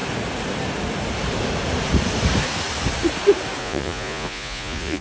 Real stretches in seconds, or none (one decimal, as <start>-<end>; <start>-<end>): 0.0-3.6